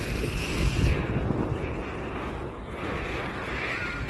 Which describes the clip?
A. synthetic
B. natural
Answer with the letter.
B